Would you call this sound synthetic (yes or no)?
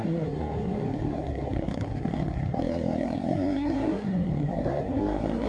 yes